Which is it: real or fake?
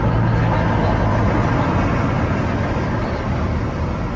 real